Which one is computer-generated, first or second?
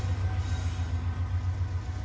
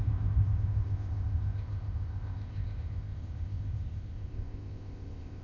second